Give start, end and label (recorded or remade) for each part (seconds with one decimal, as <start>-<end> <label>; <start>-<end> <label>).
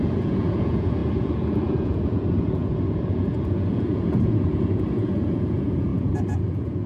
0.0-6.9 remade